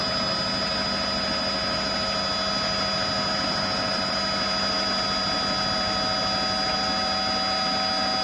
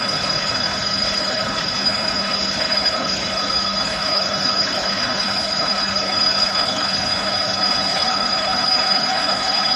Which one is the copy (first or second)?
second